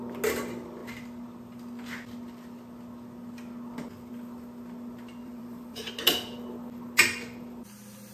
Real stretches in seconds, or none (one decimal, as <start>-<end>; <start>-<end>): 0.0-5.2; 5.9-8.1